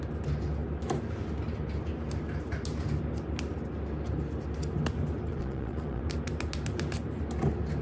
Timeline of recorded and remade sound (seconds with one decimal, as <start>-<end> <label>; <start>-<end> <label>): 0.0-5.3 recorded; 5.3-6.0 remade; 6.0-7.8 recorded